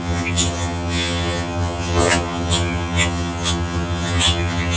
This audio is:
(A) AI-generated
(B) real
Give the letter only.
A